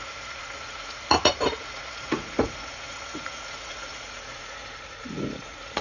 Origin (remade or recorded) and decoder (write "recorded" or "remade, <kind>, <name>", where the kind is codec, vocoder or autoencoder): remade, vocoder, Vocos